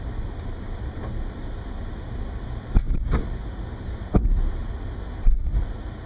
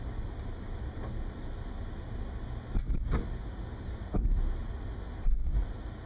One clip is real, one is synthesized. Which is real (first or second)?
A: second